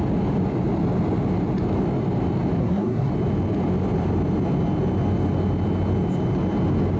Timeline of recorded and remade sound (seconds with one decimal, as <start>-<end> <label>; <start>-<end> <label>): 0.0-2.6 recorded; 2.6-3.1 remade; 3.1-7.0 recorded